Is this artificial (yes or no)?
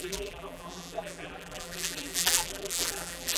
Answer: yes